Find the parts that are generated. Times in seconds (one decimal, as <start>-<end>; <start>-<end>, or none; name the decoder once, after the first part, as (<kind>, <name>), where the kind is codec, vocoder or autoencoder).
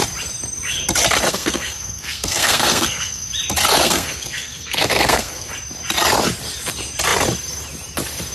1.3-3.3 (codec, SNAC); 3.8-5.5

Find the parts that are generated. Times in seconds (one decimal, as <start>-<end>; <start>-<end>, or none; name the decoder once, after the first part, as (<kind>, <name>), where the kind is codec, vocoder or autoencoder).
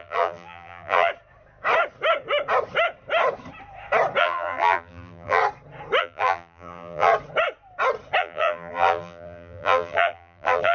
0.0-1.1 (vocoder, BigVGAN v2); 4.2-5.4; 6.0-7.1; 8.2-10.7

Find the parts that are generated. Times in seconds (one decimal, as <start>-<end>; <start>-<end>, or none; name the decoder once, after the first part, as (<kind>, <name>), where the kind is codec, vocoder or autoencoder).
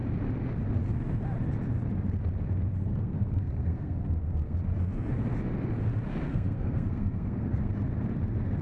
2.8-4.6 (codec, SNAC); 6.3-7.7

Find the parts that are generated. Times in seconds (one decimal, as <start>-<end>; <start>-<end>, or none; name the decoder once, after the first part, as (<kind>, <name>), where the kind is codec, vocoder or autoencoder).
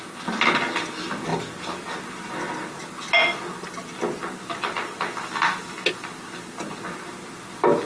none